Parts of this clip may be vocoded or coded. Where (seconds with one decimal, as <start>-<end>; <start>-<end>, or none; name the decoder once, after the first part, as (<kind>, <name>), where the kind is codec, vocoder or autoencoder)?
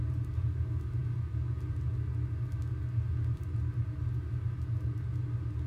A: none